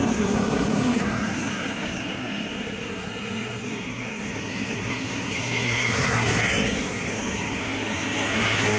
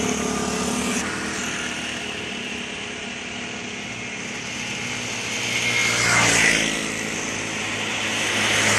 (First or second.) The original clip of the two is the second